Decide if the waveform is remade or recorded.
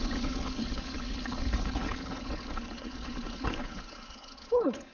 remade